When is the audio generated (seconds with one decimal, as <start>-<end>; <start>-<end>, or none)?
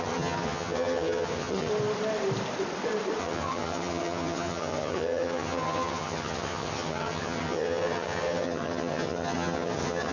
0.0-1.7; 3.2-10.1